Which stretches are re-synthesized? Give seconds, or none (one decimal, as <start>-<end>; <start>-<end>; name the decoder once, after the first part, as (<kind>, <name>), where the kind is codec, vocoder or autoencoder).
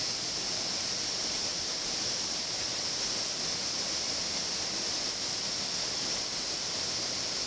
1.5-2.5 (vocoder, BigVGAN v2)